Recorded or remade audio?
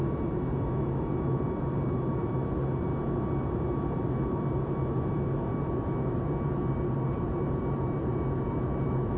remade